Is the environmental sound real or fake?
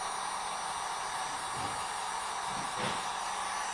real